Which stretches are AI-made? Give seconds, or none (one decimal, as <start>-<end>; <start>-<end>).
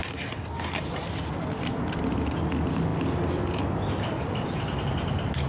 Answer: none